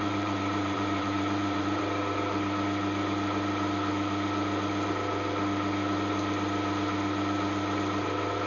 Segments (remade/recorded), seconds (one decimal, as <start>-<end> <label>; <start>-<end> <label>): 0.0-1.8 remade; 1.8-8.5 recorded